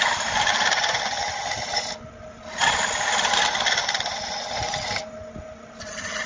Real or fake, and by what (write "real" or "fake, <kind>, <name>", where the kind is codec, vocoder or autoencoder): real